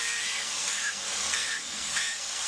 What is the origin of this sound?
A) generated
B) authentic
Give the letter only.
A